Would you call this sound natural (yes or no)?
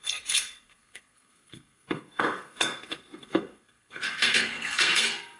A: no